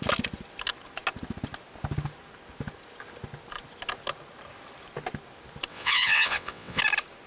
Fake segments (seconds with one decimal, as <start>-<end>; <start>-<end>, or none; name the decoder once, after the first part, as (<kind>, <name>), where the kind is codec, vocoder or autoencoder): 5.7-6.8 (vocoder, WaveNeXt)